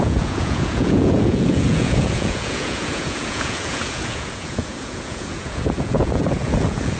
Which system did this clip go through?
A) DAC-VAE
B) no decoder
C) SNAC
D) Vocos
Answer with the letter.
D